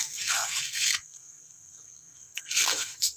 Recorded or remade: remade